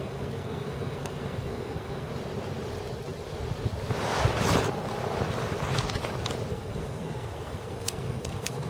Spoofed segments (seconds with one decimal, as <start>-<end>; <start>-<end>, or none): 0.0-2.1; 6.5-8.7